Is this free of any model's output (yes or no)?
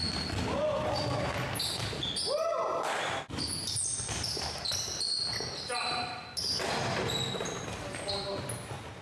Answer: yes